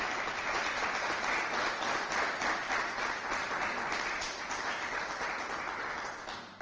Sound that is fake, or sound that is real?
real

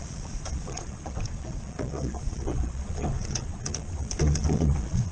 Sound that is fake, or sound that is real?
fake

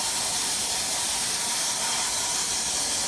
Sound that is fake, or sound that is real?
real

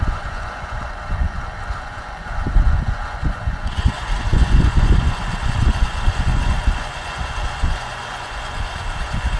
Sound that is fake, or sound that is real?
fake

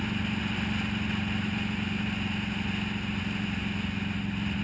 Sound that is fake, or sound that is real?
real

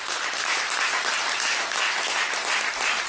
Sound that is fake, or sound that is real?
real